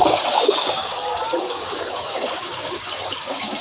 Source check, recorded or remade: remade